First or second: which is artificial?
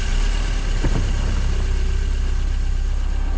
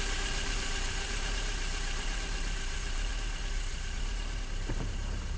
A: second